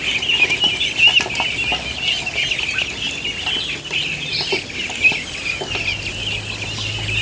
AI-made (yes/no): no